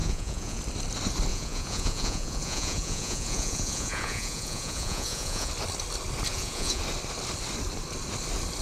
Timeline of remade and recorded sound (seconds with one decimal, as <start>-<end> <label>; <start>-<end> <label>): 0.0-0.6 remade; 0.6-1.3 recorded; 1.3-5.5 remade; 5.5-6.3 recorded; 6.3-6.8 remade; 6.8-8.6 recorded